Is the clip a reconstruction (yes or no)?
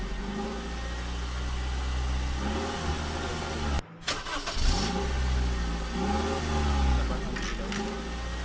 no